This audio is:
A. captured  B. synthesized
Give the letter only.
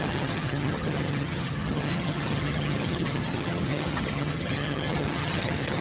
B